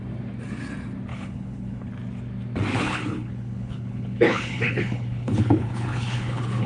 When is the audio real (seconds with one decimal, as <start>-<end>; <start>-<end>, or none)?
0.0-1.1; 1.9-2.7